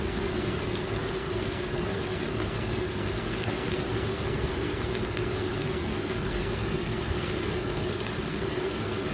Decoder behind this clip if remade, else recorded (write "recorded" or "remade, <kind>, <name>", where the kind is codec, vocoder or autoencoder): remade, codec, SNAC